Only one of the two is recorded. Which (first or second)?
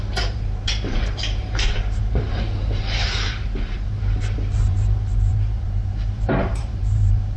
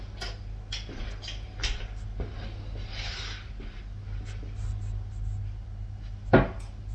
second